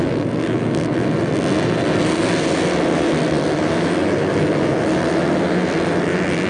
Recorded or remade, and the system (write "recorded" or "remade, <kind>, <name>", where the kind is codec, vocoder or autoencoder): recorded